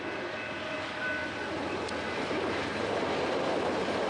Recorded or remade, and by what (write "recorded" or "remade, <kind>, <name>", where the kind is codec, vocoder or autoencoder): recorded